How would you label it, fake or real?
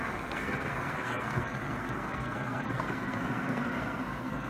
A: fake